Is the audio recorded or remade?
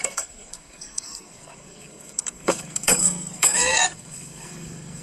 remade